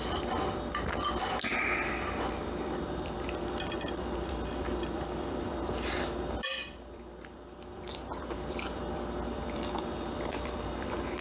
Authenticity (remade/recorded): remade